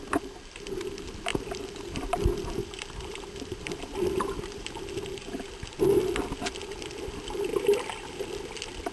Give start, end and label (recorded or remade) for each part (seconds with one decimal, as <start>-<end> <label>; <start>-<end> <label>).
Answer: 0.0-1.3 recorded; 1.3-5.1 remade; 5.1-7.5 recorded; 7.5-8.4 remade; 8.4-8.9 recorded

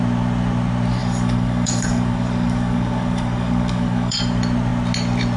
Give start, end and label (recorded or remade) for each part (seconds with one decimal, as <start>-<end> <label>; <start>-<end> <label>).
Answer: 0.0-1.0 recorded; 1.0-4.2 remade; 4.2-5.4 recorded

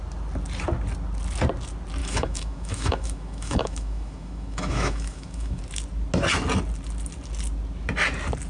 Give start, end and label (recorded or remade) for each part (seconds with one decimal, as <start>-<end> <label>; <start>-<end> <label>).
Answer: 0.0-2.0 recorded; 2.0-5.6 remade; 5.6-8.5 recorded